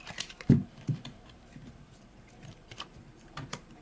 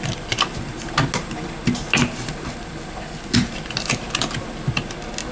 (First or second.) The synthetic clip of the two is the first